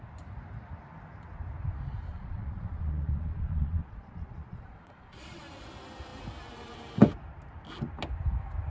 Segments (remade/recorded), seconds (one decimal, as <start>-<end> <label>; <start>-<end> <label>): 0.0-2.1 recorded; 2.1-5.4 remade; 5.4-8.7 recorded